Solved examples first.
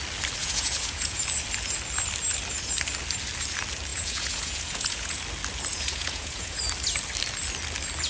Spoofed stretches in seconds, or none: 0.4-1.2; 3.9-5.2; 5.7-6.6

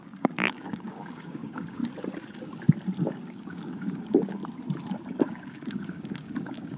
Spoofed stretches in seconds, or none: 0.0-1.8; 3.1-4.4; 5.1-6.8

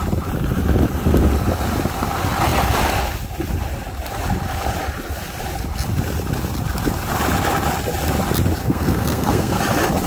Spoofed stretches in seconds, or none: 8.6-9.6